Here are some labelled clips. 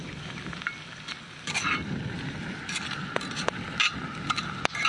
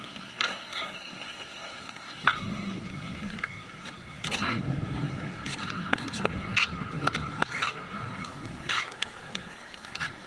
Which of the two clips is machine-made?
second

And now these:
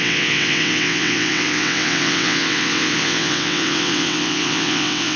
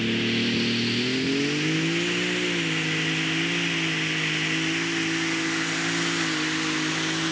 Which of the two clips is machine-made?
first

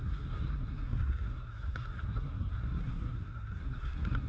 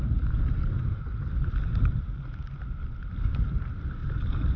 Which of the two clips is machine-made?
first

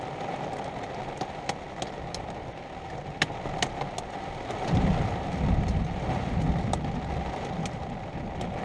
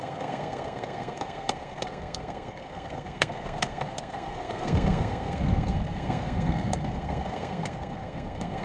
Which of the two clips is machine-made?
second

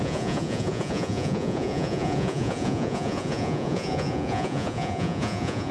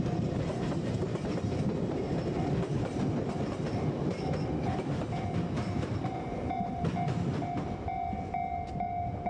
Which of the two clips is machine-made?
first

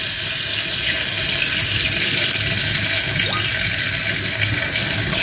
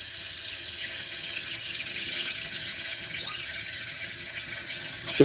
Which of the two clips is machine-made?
second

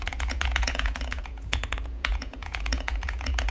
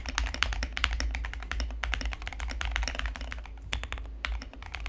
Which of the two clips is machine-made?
first